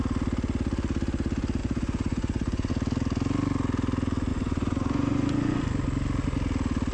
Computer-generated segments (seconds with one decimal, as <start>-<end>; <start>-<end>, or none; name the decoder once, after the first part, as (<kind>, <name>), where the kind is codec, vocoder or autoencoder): 1.6-2.7 (vocoder, Vocos); 4.3-5.6